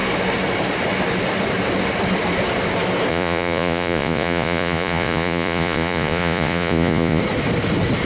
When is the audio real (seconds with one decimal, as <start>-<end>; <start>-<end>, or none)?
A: 0.0-3.1; 7.2-8.1